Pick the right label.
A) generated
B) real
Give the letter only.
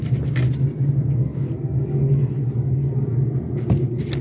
B